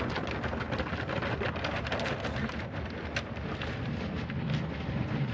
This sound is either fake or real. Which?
real